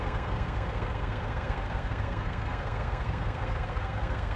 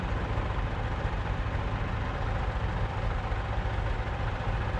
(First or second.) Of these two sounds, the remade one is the first